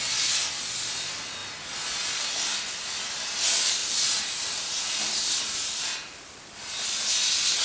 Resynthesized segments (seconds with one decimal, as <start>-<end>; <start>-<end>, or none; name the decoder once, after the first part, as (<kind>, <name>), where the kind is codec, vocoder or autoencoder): 3.8-6.2 (vocoder, BigVGAN v2)